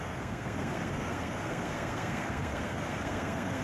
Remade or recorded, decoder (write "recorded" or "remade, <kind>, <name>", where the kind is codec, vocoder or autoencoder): remade, codec, SNAC